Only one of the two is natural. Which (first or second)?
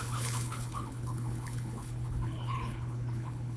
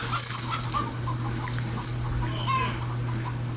second